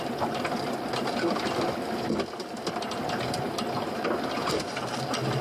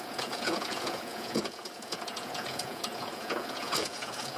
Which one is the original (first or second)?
first